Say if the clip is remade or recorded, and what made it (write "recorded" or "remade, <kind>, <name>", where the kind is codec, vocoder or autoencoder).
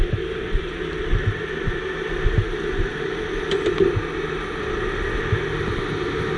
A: recorded